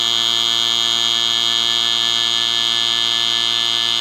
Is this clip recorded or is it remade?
recorded